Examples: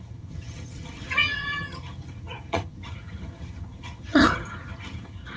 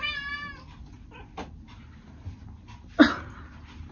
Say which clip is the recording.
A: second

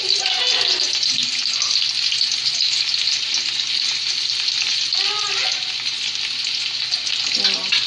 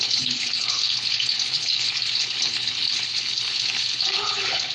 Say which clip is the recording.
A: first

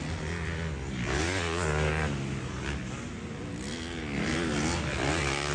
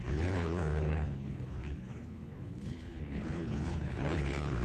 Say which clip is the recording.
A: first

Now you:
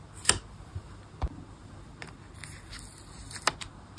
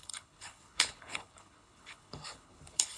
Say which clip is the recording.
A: first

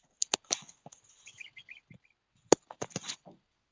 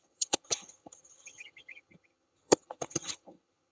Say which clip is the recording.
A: first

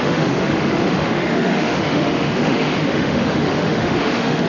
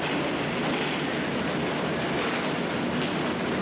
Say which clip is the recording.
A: second